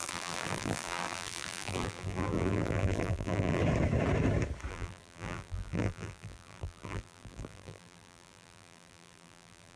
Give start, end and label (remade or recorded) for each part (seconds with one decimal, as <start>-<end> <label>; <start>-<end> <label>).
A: 0.0-3.6 remade; 3.6-4.7 recorded; 4.7-9.8 remade